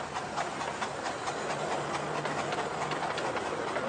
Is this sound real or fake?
real